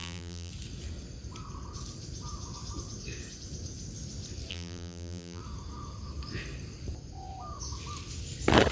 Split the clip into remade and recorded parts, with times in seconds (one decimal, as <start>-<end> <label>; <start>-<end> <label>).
0.0-0.5 remade; 0.5-4.5 recorded; 4.5-5.4 remade; 5.4-8.7 recorded